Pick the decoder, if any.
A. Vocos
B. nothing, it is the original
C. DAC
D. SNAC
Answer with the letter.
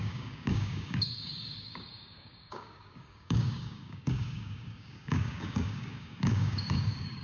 C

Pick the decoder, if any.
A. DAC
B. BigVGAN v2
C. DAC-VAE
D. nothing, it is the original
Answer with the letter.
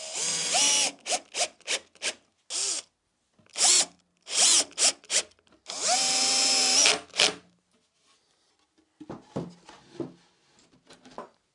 D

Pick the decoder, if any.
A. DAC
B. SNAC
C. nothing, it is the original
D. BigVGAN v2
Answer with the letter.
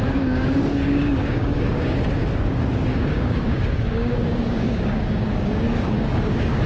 A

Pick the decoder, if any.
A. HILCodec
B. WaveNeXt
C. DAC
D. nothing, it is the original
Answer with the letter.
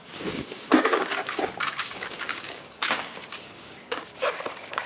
C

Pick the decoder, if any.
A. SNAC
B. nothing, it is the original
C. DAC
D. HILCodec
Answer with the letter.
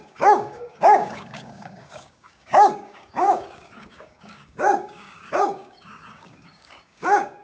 C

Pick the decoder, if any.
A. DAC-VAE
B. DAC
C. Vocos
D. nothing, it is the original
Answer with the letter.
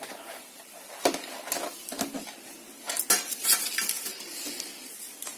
D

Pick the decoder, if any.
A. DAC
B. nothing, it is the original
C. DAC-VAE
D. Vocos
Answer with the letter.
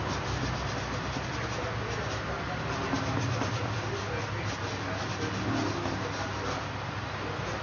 B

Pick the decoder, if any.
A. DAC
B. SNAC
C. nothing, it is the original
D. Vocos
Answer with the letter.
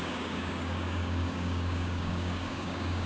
A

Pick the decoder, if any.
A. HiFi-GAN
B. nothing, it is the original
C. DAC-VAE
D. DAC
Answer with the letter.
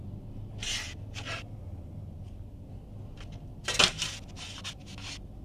B